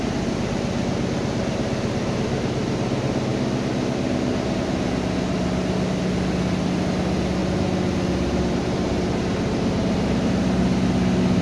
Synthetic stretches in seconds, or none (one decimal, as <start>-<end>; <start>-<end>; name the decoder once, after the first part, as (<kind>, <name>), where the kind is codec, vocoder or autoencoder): none